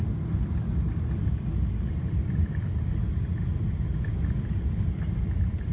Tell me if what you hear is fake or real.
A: real